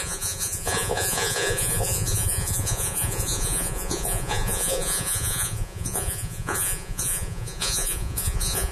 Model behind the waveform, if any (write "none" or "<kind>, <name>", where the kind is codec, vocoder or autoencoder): vocoder, Vocos